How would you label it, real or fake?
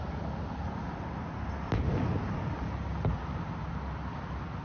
real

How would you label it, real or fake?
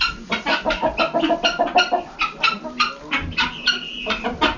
real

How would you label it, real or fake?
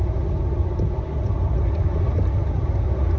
real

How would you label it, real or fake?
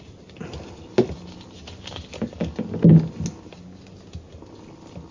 real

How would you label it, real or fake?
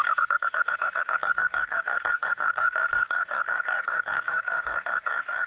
fake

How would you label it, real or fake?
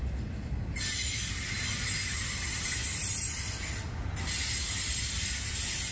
real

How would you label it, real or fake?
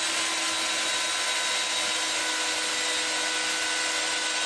real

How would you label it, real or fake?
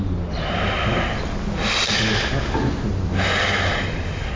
real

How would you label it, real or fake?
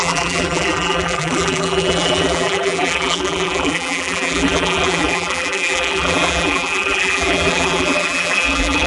fake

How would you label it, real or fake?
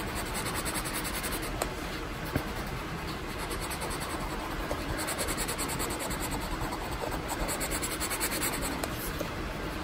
real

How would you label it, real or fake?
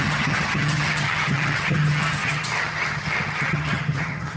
fake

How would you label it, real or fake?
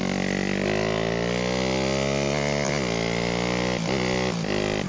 real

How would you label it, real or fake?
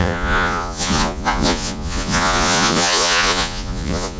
fake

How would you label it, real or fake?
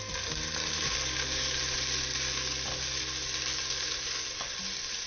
real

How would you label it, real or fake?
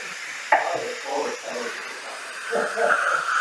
fake